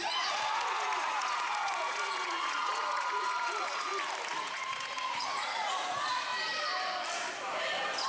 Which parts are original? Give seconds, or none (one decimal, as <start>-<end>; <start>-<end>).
3.9-4.4; 6.3-8.1